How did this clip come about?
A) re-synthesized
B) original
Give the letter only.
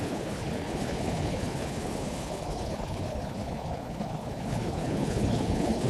A